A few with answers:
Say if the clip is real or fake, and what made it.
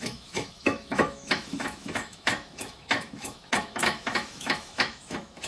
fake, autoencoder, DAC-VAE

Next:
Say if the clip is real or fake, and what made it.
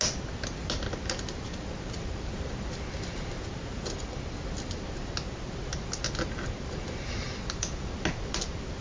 real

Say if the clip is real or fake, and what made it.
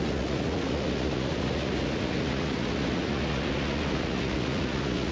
fake, vocoder, Vocos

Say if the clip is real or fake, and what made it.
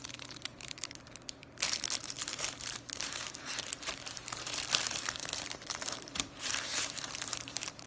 fake, vocoder, BigVGAN v2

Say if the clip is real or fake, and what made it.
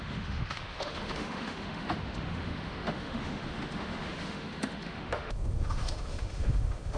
fake, autoencoder, DAC-VAE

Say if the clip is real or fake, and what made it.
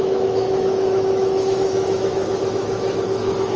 fake, autoencoder, DAC-VAE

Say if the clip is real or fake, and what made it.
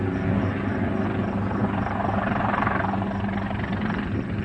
real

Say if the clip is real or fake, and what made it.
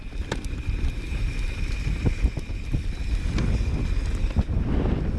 real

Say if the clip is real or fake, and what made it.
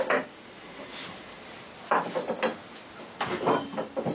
real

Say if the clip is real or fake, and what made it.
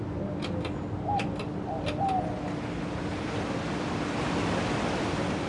real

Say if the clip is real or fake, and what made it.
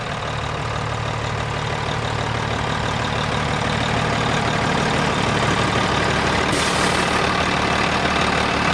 real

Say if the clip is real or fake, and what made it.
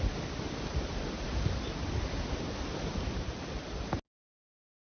real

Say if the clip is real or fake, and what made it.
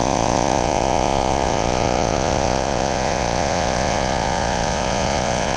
fake, vocoder, Vocos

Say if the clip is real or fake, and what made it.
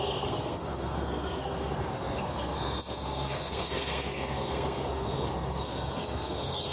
fake, codec, SNAC